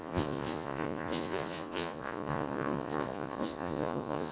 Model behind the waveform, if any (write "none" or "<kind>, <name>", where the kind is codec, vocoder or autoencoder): vocoder, Vocos